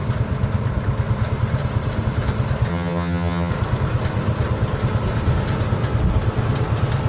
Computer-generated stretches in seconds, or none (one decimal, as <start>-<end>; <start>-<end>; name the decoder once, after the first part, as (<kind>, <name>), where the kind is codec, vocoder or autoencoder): 2.7-3.5 (vocoder, HiFi-GAN)